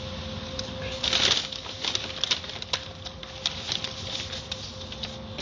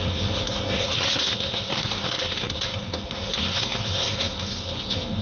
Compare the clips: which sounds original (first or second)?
first